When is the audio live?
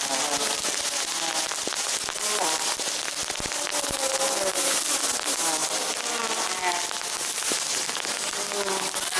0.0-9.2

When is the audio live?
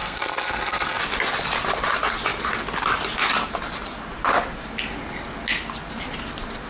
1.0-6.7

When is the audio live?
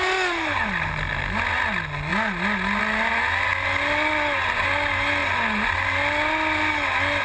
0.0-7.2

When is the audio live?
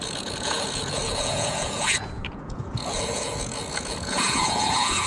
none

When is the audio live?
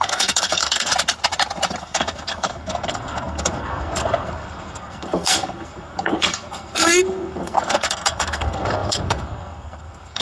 0.9-1.8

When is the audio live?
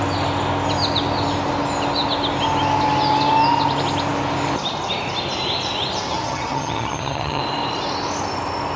0.0-6.1; 7.4-8.8